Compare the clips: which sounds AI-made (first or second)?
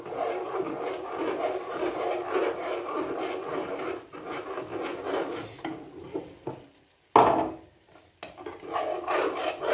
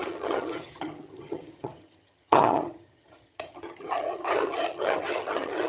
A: second